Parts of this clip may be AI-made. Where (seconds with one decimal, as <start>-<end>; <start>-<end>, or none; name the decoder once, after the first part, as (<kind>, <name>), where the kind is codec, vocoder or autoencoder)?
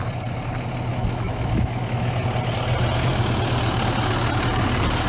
0.9-2.2 (autoencoder, DAC-VAE)